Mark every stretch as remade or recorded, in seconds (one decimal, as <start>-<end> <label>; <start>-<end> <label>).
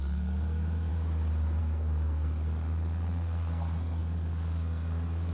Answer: 0.0-0.9 remade; 0.9-1.6 recorded; 1.6-5.3 remade